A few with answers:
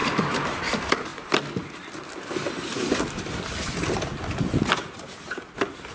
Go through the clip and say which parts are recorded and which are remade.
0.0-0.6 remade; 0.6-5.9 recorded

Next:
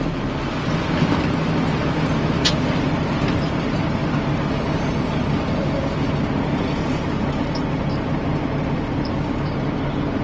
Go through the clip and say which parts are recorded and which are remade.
0.0-4.0 recorded; 4.0-4.9 remade; 4.9-10.2 recorded

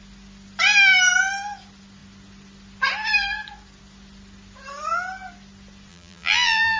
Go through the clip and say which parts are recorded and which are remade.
0.0-5.9 recorded; 5.9-6.8 remade

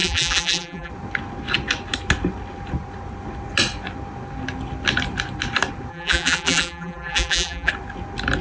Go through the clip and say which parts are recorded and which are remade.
0.0-0.9 remade; 0.9-5.9 recorded; 5.9-7.7 remade; 7.7-8.4 recorded

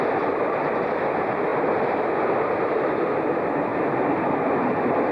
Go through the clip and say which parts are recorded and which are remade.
0.0-5.1 recorded

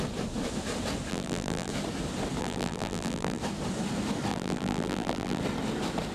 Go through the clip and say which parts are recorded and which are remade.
0.0-1.1 recorded; 1.1-1.7 remade; 1.7-2.4 recorded; 2.4-3.4 remade; 3.4-4.3 recorded; 4.3-5.4 remade; 5.4-6.1 recorded

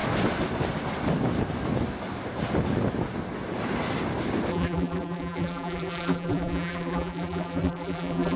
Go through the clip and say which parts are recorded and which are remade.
0.0-4.5 recorded; 4.5-8.4 remade